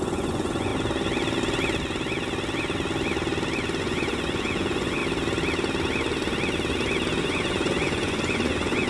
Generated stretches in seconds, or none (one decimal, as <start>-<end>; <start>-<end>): 0.0-0.7; 3.8-5.0; 7.2-8.9

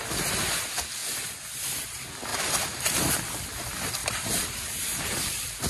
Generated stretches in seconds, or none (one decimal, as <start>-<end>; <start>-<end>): 2.3-3.1; 4.0-5.3

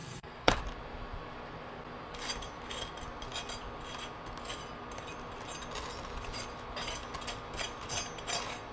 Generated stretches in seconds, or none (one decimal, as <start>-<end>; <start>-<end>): 0.0-0.6

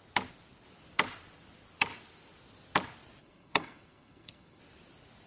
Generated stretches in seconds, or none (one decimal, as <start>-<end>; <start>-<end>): 3.2-4.6

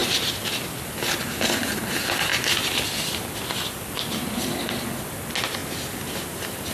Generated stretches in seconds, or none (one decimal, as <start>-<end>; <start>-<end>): 2.3-4.7; 5.6-6.7